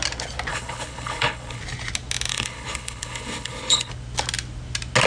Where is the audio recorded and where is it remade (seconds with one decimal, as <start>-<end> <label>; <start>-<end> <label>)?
0.0-0.5 recorded; 0.5-1.6 remade; 1.6-2.3 recorded; 2.3-3.9 remade; 3.9-5.1 recorded